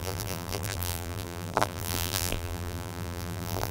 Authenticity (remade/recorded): remade